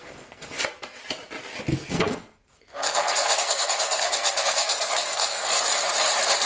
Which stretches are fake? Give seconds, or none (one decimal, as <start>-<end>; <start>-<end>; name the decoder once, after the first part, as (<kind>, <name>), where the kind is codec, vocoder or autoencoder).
0.0-1.0 (codec, SNAC); 1.7-5.6